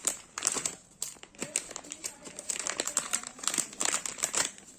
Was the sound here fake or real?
fake